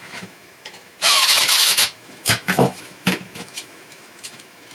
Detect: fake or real fake